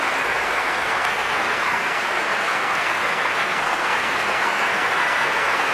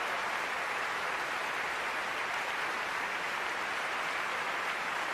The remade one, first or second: first